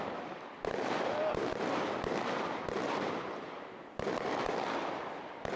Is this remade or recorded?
recorded